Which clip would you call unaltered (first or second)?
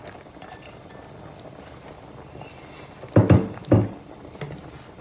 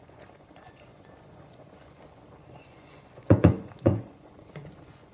first